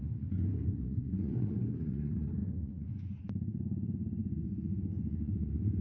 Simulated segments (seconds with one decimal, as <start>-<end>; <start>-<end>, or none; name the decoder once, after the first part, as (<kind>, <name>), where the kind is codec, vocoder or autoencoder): 0.0-5.8 (vocoder, Vocos)